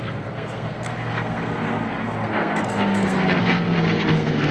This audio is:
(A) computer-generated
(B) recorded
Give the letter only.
A